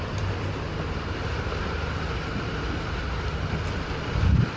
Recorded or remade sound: remade